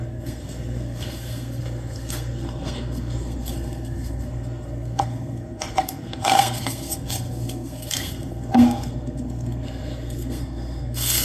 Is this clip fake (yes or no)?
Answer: yes